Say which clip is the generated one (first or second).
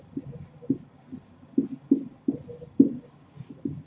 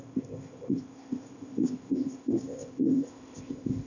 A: second